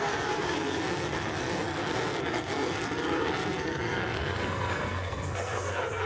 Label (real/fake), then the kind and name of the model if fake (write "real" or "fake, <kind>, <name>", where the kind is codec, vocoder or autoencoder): fake, codec, SNAC